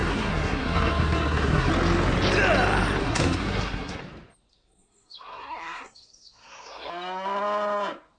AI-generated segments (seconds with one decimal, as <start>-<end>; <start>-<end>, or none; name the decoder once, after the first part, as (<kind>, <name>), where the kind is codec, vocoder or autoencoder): 0.0-1.7 (codec, SNAC); 3.0-4.0; 4.5-6.9